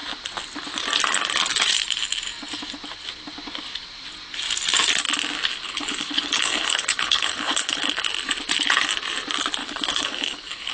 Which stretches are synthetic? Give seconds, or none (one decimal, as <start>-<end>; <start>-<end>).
5.5-8.0; 9.6-10.7